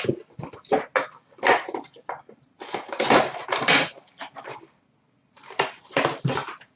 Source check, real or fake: real